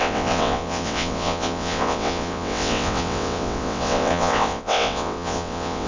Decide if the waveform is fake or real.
fake